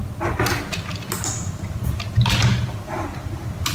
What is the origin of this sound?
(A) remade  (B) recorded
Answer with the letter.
B